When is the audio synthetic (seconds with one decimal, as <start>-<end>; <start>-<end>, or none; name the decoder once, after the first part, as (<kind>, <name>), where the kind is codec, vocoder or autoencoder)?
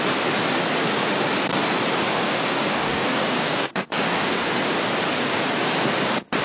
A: 2.1-4.5 (codec, DAC)